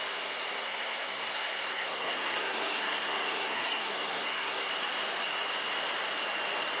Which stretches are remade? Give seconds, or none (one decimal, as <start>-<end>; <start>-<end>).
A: 0.6-4.7